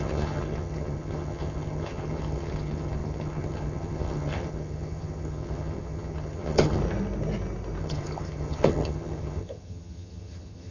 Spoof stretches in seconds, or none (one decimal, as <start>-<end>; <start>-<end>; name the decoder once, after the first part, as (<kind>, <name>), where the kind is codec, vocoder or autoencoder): 0.0-6.8 (vocoder, HiFi-GAN); 7.8-10.7